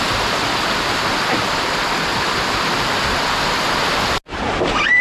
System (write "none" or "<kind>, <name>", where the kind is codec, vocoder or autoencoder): none